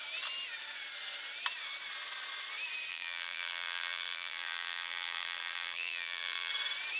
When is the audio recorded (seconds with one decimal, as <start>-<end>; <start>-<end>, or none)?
0.0-2.9; 6.5-7.0